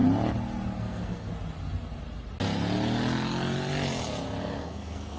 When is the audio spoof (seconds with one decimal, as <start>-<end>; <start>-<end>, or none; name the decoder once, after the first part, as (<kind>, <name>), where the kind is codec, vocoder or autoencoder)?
0.8-1.3 (codec, SNAC); 4.4-5.2